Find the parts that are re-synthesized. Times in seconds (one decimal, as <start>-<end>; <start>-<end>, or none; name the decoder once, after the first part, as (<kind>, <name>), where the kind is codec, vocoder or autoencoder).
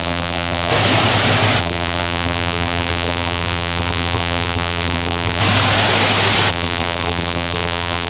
0.0-0.7 (vocoder, BigVGAN v2); 1.6-5.4; 6.5-8.1